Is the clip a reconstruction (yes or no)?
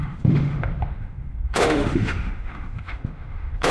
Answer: yes